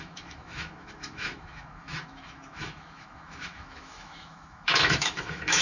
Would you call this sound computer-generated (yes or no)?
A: yes